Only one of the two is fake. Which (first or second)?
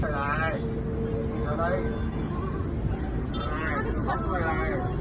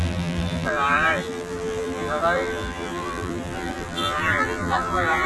second